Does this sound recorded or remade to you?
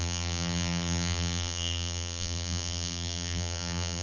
remade